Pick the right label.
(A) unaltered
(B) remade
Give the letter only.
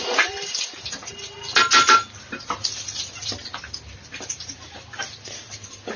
A